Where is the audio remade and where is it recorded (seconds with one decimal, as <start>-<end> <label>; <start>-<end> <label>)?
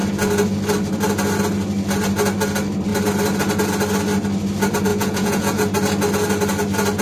0.0-4.9 recorded; 4.9-5.6 remade; 5.6-7.0 recorded